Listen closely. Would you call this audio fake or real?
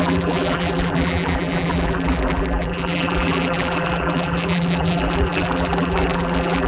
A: fake